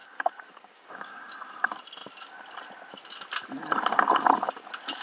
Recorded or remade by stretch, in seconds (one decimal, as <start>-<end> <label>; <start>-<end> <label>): 0.0-1.3 remade; 1.3-5.0 recorded

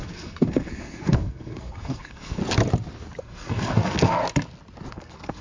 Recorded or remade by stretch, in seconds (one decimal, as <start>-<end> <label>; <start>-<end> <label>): 0.0-2.4 remade; 2.4-3.2 recorded; 3.2-4.2 remade; 4.2-4.9 recorded; 4.9-5.4 remade

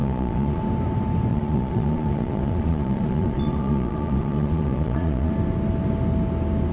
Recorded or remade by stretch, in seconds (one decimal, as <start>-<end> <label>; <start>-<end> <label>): 0.0-0.6 remade; 0.6-1.3 recorded; 1.3-5.3 remade; 5.3-6.7 recorded

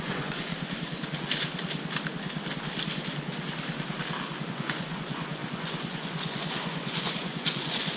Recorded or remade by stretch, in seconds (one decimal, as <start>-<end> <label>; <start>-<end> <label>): 0.0-0.5 remade; 0.5-4.5 recorded; 4.5-8.0 remade

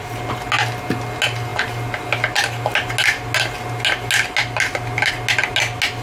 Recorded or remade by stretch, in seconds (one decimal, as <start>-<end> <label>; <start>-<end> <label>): 0.0-6.0 recorded